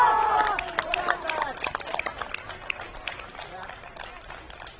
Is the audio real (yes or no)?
yes